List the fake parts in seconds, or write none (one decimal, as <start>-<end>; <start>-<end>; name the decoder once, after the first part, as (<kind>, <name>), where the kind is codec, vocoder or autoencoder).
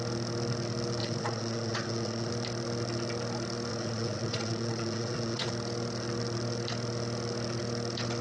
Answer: 1.0-2.3 (vocoder, Vocos); 3.7-5.5